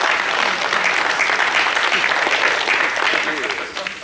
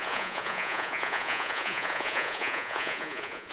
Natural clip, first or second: first